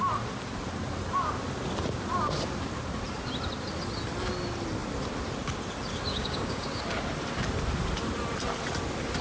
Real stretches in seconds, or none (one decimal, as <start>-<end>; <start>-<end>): 0.0-6.1; 6.8-9.2